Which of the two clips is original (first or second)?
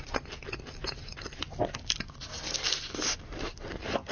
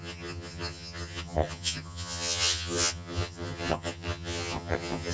first